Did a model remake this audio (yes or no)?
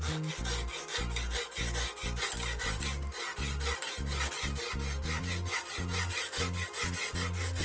no